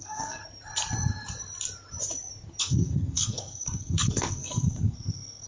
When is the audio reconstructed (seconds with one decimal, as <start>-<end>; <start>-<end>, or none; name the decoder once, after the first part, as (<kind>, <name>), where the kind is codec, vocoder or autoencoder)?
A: 0.0-0.4 (codec, SNAC); 2.6-5.5